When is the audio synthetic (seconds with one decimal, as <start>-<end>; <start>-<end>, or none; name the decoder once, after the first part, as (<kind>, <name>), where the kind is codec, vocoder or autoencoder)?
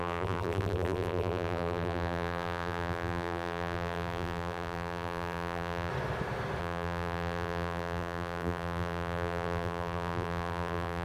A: 0.0-5.9 (vocoder, BigVGAN v2); 6.6-11.0